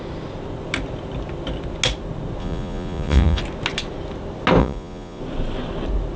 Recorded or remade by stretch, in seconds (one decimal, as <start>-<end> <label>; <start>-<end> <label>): 0.0-2.4 recorded; 2.4-3.4 remade; 3.4-4.6 recorded; 4.6-5.2 remade; 5.2-6.2 recorded